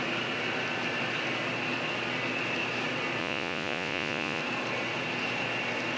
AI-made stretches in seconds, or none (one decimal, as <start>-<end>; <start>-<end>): 3.2-4.4